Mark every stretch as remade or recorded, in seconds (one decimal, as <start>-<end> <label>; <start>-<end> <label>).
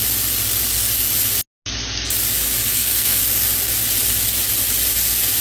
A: 0.0-2.7 recorded; 2.7-3.2 remade; 3.2-5.4 recorded